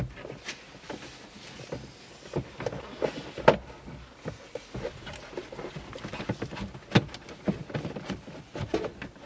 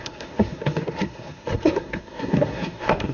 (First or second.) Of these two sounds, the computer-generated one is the second